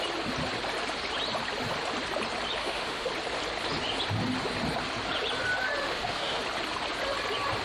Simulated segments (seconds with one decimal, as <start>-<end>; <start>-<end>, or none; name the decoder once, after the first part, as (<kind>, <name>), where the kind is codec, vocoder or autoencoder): 2.6-3.1 (autoencoder, DAC-VAE); 5.8-6.4